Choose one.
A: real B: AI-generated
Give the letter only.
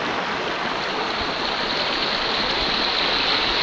A